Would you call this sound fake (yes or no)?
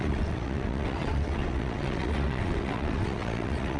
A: yes